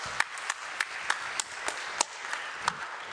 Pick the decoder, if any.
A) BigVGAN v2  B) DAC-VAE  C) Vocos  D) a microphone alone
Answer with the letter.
D